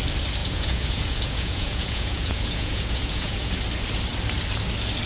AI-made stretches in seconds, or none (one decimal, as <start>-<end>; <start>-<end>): 0.4-3.5